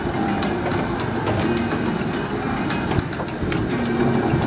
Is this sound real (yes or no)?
no